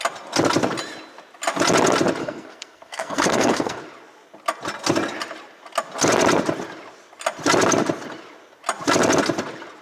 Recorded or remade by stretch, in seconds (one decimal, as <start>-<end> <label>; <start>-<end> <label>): 0.0-2.2 recorded; 2.2-3.8 remade; 3.8-9.8 recorded